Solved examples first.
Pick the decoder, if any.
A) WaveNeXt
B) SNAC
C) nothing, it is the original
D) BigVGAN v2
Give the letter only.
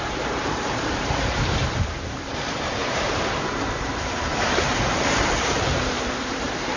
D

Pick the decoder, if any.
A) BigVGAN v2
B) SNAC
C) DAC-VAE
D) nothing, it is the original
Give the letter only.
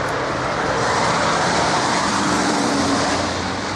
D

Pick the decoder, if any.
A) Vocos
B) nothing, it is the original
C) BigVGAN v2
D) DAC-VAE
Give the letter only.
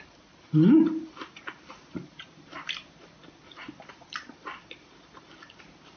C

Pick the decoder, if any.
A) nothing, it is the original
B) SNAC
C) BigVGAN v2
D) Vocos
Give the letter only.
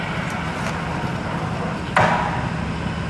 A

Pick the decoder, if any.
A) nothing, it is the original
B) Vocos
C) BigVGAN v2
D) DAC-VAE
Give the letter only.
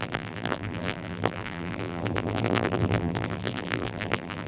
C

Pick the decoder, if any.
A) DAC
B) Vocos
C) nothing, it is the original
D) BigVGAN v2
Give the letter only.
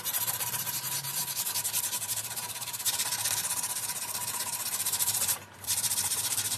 D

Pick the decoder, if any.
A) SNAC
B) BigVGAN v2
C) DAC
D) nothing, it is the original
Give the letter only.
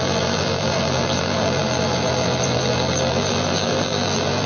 B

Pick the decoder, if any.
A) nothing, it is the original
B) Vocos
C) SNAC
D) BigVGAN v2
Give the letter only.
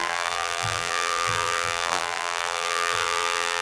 D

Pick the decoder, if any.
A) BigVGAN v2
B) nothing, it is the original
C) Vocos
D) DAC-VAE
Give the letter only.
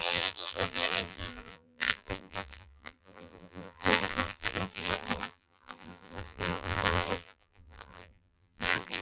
A